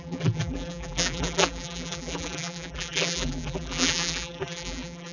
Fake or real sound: fake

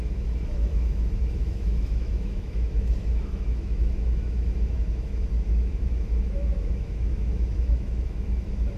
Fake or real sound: fake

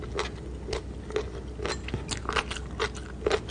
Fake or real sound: real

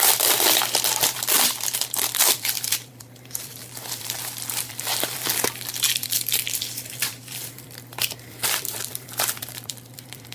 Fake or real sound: fake